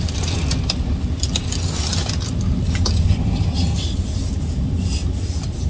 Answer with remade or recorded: recorded